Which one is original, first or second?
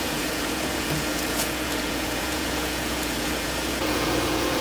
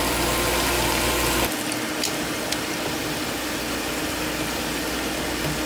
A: second